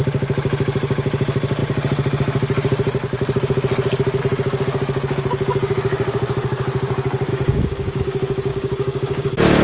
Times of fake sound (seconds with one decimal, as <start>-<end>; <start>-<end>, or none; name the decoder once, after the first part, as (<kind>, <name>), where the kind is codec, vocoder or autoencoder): 7.3-8.0 (codec, DAC); 8.5-9.6